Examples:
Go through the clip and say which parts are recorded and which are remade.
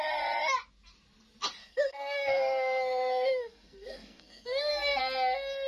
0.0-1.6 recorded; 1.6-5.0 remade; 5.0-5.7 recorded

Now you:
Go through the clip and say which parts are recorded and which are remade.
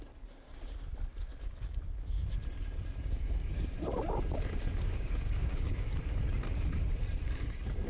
0.0-4.7 recorded; 4.7-5.9 remade; 5.9-7.9 recorded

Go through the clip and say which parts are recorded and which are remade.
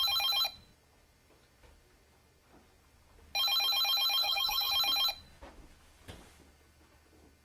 0.0-4.2 recorded; 4.2-4.7 remade; 4.7-7.4 recorded